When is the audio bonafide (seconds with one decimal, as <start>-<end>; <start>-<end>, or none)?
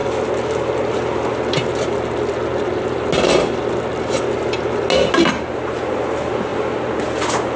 0.0-7.6